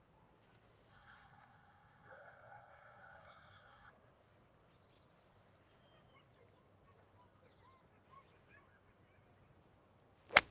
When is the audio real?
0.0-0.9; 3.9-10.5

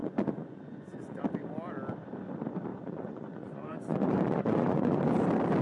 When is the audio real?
1.2-2.7; 5.0-5.6

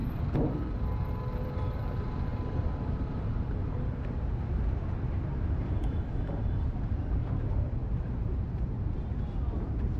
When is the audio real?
none